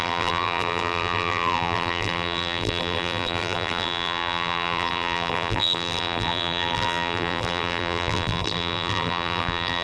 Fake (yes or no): yes